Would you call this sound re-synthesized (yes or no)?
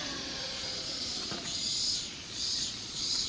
yes